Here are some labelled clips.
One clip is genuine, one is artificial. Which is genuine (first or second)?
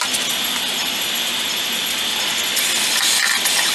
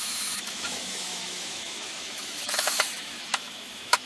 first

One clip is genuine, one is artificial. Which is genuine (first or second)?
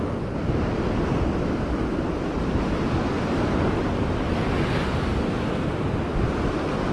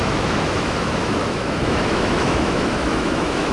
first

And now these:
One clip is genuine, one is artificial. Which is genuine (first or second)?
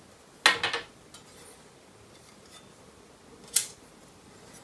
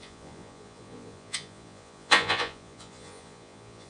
first